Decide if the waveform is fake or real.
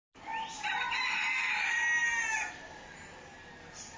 real